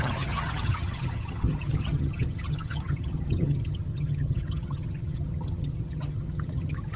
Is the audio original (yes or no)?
no